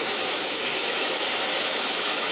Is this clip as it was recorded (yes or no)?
no